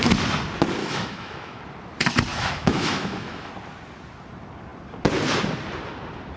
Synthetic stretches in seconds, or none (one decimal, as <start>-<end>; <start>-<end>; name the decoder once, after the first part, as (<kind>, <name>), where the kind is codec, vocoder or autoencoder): 0.8-1.6 (autoencoder, DAC-VAE); 2.3-3.5